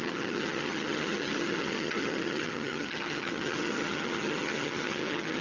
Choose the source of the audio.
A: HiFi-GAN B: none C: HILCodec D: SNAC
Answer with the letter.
A